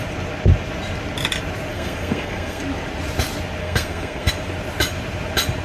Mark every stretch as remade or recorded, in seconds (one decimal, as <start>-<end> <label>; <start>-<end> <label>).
0.0-1.7 recorded; 1.7-2.6 remade; 2.6-3.6 recorded; 3.6-4.3 remade; 4.3-5.6 recorded